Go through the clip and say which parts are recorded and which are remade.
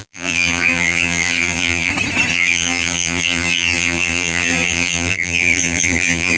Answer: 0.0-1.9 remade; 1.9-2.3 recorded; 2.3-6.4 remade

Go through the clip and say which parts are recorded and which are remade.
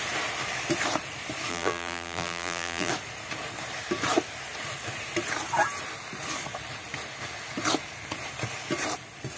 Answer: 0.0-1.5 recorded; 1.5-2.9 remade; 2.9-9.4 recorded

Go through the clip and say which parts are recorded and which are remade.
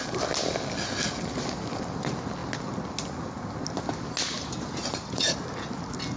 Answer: 0.0-4.9 recorded; 4.9-5.5 remade; 5.5-6.2 recorded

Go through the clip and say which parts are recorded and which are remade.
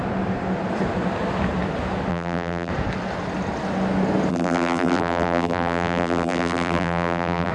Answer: 0.0-2.1 recorded; 2.1-2.7 remade; 2.7-4.3 recorded; 4.3-7.5 remade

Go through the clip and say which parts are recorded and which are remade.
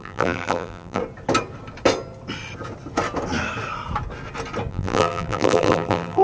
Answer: 0.0-1.0 remade; 1.0-4.7 recorded; 4.7-6.2 remade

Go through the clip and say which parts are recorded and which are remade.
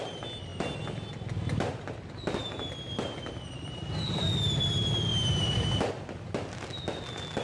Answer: 0.0-5.1 recorded; 5.1-5.8 remade; 5.8-7.4 recorded